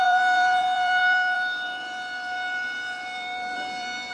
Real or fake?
fake